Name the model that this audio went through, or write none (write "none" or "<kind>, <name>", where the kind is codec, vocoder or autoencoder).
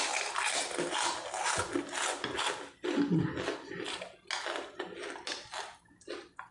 none